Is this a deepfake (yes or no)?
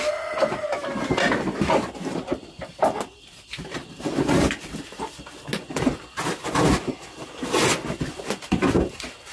no